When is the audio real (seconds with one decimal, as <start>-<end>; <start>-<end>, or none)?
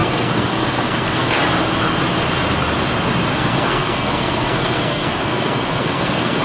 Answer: 1.4-3.3